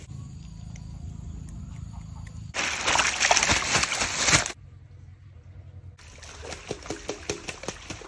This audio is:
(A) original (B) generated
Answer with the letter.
A